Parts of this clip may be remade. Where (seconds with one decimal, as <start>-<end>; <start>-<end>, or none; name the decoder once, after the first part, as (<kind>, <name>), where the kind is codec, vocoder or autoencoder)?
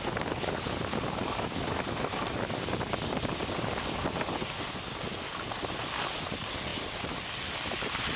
none